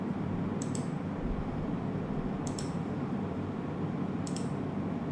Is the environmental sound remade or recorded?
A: remade